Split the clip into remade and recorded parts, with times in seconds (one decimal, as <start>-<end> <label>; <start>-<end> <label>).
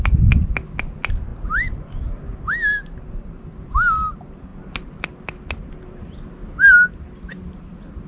0.0-8.1 recorded